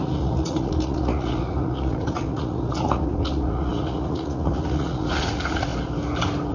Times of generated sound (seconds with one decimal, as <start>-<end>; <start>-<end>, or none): 0.0-5.7